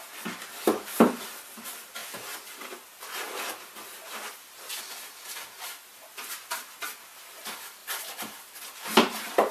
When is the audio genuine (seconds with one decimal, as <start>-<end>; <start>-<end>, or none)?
0.0-7.8; 8.6-9.5